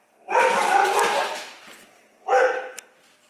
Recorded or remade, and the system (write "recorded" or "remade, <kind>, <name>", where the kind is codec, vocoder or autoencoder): recorded